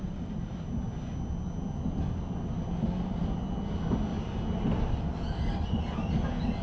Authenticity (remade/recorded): recorded